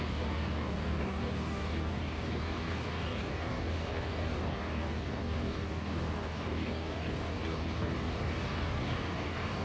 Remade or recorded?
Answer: remade